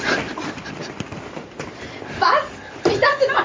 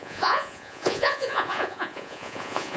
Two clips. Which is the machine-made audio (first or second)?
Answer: second